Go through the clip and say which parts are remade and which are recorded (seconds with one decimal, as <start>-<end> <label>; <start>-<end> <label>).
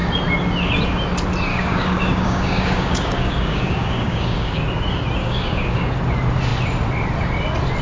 0.0-1.5 recorded; 1.5-4.6 remade; 4.6-5.2 recorded; 5.2-5.9 remade; 5.9-7.8 recorded